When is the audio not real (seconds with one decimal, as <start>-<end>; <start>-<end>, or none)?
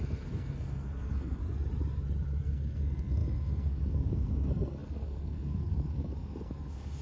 0.0-1.4; 2.4-7.0